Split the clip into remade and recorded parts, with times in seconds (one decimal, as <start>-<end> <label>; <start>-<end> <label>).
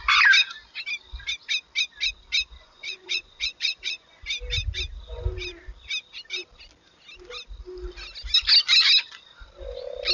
0.0-2.5 recorded; 2.5-4.2 remade; 4.2-10.1 recorded